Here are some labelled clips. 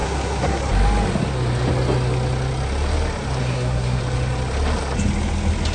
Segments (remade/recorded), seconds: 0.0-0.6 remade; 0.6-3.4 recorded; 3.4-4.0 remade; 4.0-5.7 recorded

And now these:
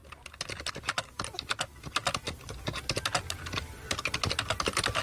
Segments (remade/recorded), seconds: 0.0-5.0 recorded

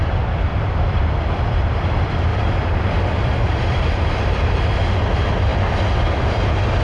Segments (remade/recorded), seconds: 0.0-0.5 recorded; 0.5-1.9 remade; 1.9-2.3 recorded; 2.3-4.5 remade; 4.5-5.5 recorded; 5.5-6.8 remade

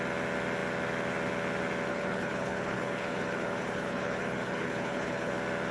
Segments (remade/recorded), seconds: 0.0-1.9 recorded; 1.9-5.3 remade; 5.3-5.7 recorded

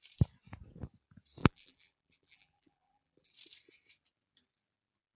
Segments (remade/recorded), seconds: 0.0-1.4 recorded; 1.4-3.3 remade; 3.3-5.2 recorded

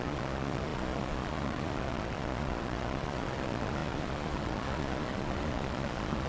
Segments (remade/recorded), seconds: 0.0-6.3 remade

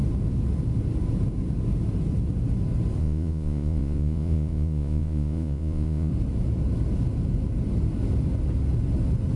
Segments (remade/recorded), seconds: 0.0-3.0 recorded; 3.0-6.1 remade; 6.1-9.4 recorded